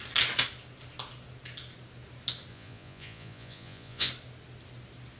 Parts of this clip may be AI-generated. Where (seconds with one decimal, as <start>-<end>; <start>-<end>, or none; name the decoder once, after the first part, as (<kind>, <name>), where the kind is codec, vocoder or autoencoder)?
2.5-4.1 (vocoder, Vocos)